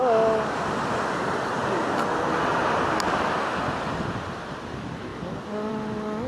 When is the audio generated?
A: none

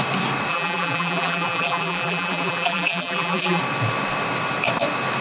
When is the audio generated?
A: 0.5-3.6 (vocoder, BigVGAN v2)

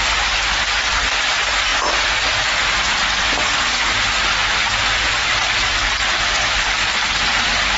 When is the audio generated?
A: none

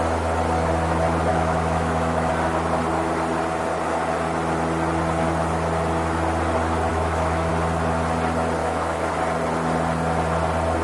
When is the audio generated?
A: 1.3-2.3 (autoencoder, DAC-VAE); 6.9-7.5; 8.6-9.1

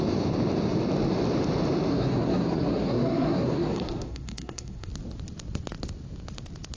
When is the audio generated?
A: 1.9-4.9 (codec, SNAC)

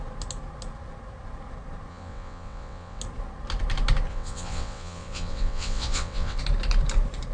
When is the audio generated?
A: 1.9-3.0 (vocoder, WaveNeXt); 4.1-6.4

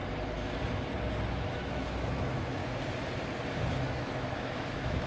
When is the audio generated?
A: 1.3-2.6 (autoencoder, DAC-VAE); 3.7-5.1